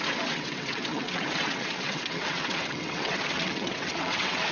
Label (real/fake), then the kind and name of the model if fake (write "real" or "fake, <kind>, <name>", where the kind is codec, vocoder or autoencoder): fake, vocoder, WaveNeXt